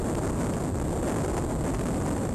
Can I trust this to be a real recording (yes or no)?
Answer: yes